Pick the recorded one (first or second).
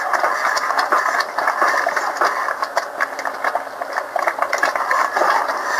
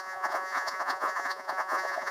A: first